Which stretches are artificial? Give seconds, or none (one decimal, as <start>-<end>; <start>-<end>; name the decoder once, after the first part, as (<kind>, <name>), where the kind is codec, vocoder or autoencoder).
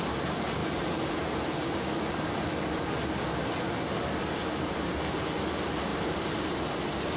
0.6-1.2 (vocoder, BigVGAN v2); 5.9-6.7